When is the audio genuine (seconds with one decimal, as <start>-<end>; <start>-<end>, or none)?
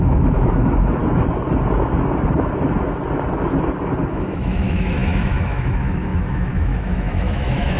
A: 1.0-4.1